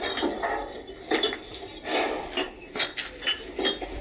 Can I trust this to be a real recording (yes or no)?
yes